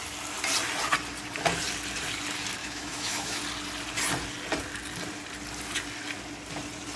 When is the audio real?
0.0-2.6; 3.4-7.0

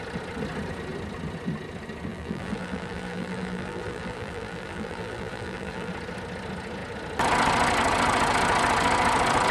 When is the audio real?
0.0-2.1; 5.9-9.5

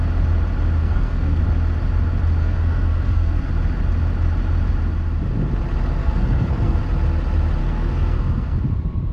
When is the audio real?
0.0-0.8; 1.4-2.4; 3.5-6.0; 6.8-7.6; 8.6-9.1

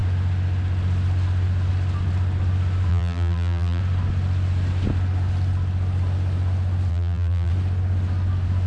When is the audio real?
0.0-2.9; 3.8-6.9; 7.5-8.7

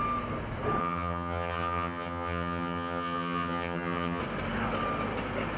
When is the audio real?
0.0-0.8; 4.2-5.6

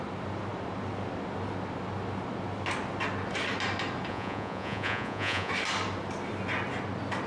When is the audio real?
0.0-4.1; 5.5-7.3

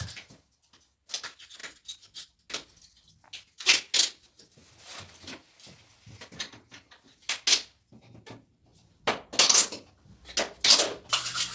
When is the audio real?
0.0-11.5

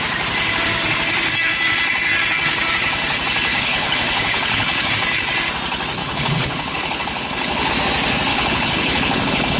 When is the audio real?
0.0-3.5; 4.9-6.0; 7.7-8.3